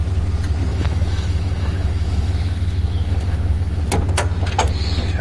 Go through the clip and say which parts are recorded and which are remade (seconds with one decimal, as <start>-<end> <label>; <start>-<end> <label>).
0.0-0.7 recorded; 0.7-3.8 remade; 3.8-5.2 recorded